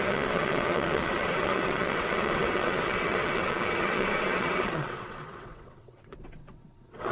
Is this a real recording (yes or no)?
no